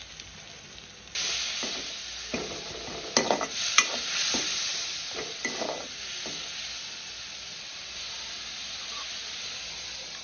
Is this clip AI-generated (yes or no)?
no